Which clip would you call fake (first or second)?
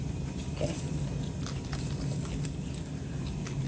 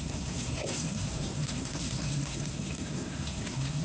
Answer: second